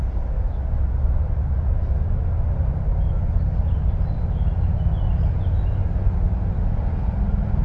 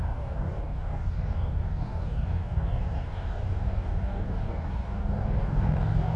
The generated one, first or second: second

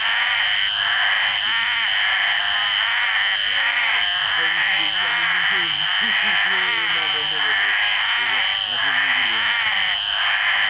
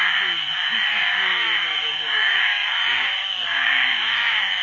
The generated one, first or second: second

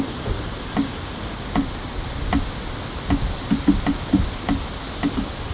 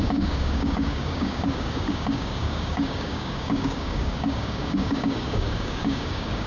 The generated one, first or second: second